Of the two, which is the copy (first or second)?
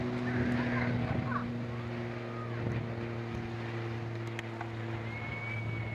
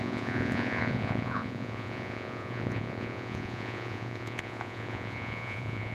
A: second